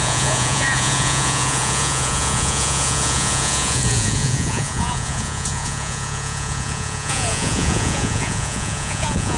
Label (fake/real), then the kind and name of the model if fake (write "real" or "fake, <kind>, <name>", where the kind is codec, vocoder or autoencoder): fake, vocoder, Vocos